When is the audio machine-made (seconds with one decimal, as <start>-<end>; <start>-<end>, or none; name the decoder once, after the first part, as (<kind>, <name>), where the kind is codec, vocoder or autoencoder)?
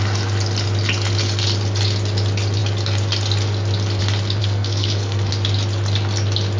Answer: 4.4-5.3 (codec, SNAC)